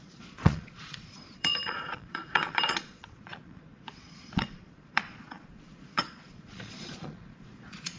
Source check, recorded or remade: remade